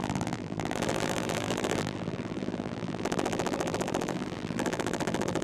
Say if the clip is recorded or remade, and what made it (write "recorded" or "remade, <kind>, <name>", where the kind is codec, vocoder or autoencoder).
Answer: remade, vocoder, BigVGAN v2